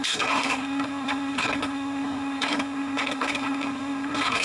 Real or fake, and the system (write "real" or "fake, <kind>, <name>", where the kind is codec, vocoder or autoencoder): fake, codec, SNAC